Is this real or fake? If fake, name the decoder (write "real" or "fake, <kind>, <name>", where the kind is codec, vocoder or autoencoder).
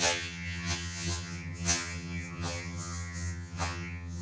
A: fake, vocoder, HiFi-GAN